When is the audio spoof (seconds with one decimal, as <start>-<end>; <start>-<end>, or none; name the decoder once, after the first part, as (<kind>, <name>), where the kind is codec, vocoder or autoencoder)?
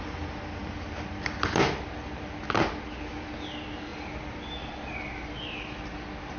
0.6-1.1 (vocoder, BigVGAN v2)